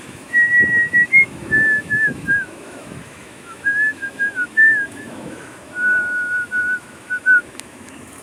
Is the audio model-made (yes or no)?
yes